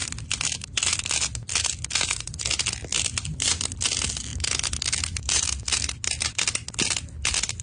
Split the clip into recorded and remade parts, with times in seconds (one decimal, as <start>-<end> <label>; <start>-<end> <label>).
0.0-7.6 recorded

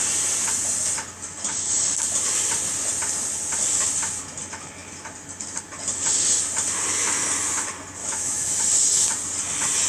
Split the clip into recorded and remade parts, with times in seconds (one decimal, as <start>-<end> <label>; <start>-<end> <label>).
0.0-8.0 recorded; 8.0-8.6 remade; 8.6-9.9 recorded

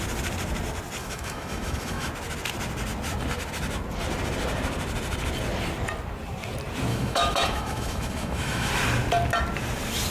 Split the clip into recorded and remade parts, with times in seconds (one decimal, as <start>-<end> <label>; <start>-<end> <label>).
0.0-1.0 recorded; 1.0-2.1 remade; 2.1-6.9 recorded; 6.9-8.7 remade; 8.7-10.1 recorded